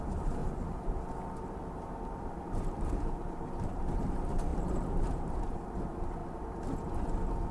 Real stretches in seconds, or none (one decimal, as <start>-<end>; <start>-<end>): 0.4-2.5; 6.2-7.5